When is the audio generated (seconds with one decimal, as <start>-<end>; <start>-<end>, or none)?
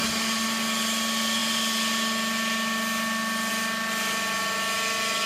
none